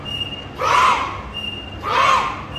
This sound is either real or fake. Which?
real